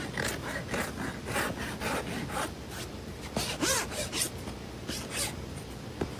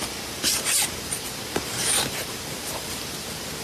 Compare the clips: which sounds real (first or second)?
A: first